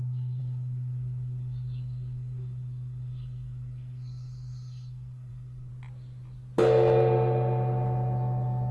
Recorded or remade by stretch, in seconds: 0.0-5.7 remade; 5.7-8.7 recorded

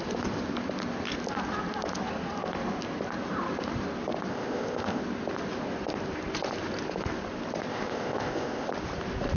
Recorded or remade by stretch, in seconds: 0.0-4.3 recorded; 4.3-5.0 remade; 5.0-7.7 recorded; 7.7-8.7 remade; 8.7-9.4 recorded

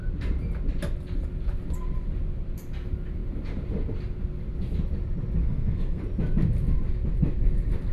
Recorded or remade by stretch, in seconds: 0.0-5.4 recorded; 5.4-6.0 remade; 6.0-7.9 recorded

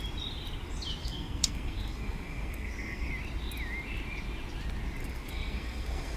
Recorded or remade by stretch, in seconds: 0.0-1.0 recorded; 1.0-3.1 remade; 3.1-5.0 recorded; 5.0-6.2 remade

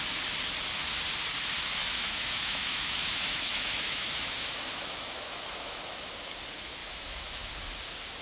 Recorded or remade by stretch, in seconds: 0.0-1.8 recorded; 1.8-6.1 remade; 6.1-6.8 recorded; 6.8-7.5 remade; 7.5-8.2 recorded

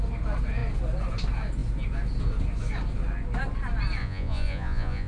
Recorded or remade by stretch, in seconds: 0.0-4.0 recorded; 4.0-5.1 remade